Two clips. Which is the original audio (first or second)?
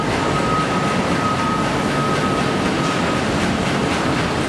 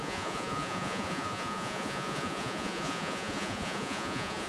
first